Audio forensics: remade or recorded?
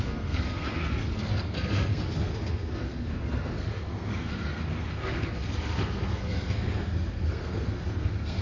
remade